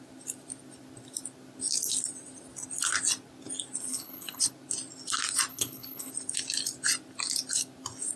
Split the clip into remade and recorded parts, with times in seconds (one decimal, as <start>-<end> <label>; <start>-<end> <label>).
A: 0.0-3.9 recorded; 3.9-4.5 remade; 4.5-5.5 recorded; 5.5-6.1 remade; 6.1-8.2 recorded